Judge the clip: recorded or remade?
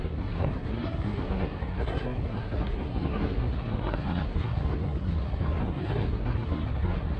remade